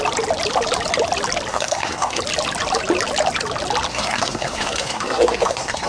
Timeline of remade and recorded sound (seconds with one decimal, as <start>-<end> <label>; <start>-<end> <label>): 0.0-1.5 recorded; 1.5-2.2 remade; 2.2-3.9 recorded; 3.9-5.9 remade